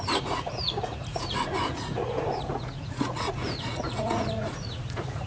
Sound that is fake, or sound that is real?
fake